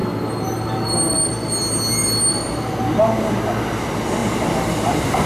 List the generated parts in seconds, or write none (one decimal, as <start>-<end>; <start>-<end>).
none